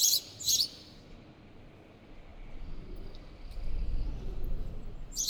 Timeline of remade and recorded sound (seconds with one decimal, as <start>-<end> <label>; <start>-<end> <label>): 0.0-5.3 recorded